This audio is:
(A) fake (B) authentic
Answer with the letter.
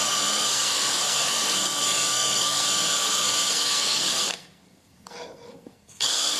A